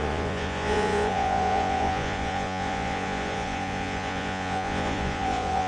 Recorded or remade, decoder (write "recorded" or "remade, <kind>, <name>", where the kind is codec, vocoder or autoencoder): remade, vocoder, Vocos